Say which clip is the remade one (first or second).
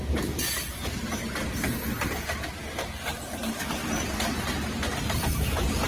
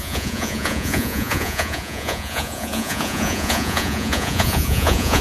second